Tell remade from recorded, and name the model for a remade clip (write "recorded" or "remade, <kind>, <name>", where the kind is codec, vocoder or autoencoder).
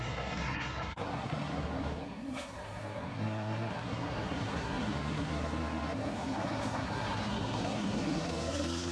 remade, codec, SNAC